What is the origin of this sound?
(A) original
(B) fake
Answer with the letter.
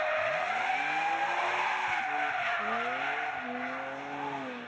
A